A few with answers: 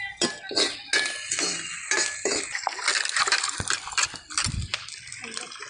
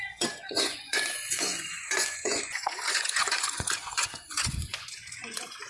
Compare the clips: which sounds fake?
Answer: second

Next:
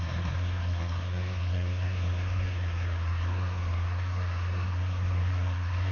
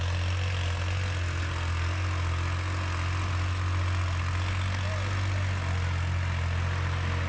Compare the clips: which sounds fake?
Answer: first